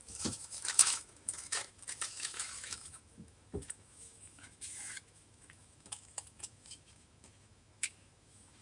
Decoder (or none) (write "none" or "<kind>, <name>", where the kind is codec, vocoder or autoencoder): autoencoder, DAC-VAE